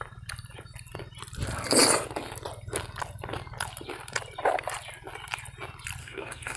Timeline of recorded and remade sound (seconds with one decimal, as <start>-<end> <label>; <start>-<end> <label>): 0.0-6.0 recorded; 6.0-6.6 remade